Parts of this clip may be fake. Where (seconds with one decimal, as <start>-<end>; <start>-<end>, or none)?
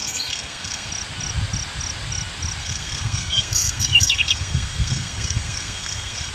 0.0-0.9; 2.6-6.3